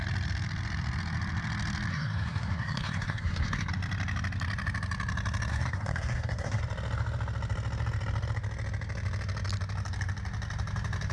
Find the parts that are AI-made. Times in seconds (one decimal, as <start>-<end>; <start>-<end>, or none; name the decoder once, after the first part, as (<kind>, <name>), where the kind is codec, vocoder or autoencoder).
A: 1.9-3.7 (codec, SNAC); 5.5-6.6